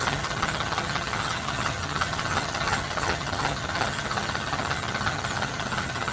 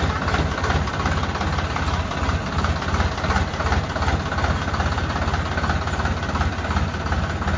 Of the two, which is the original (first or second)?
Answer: second